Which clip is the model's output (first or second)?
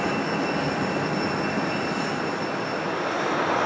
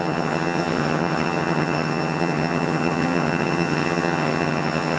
second